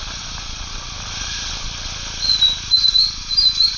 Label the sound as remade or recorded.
recorded